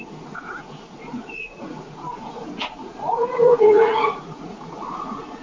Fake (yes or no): yes